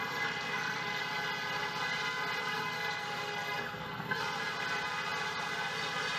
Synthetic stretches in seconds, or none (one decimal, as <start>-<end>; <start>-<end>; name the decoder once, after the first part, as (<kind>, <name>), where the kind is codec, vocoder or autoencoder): 0.0-1.0 (codec, SNAC); 2.4-4.2